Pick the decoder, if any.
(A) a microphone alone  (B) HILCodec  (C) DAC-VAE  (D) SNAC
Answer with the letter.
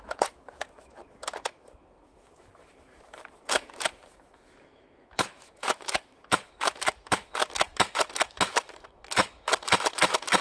C